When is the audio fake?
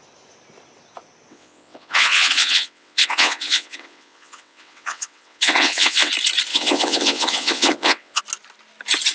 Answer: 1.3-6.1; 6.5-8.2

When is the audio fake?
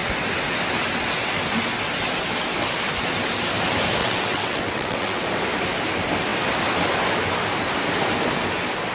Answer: 4.0-5.2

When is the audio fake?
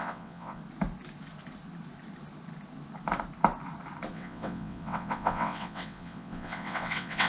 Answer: 0.0-0.6; 4.1-7.3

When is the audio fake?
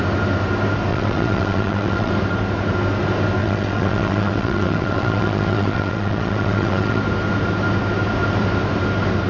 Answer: 0.9-2.1; 3.4-7.0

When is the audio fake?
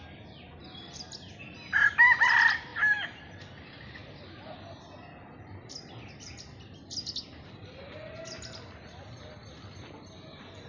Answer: none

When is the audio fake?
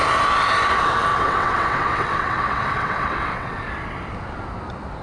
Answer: 1.1-4.1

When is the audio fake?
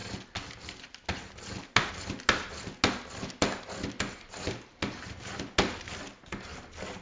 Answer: none